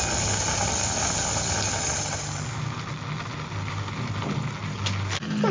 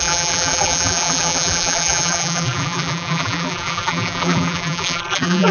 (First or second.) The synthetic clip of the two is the second